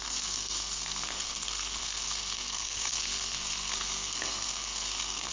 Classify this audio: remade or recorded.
remade